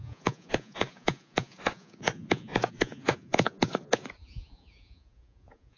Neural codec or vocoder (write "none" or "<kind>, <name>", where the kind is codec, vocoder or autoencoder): vocoder, Vocos